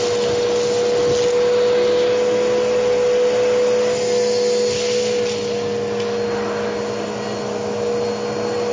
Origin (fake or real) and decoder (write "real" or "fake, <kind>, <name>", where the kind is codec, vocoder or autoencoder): real